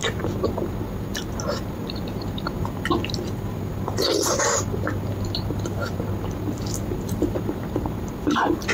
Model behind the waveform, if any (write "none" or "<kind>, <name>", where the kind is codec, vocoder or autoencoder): none